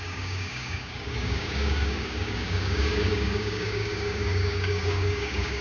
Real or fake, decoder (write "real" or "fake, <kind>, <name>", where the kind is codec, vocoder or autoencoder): fake, codec, DAC